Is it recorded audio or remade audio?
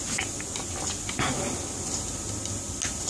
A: recorded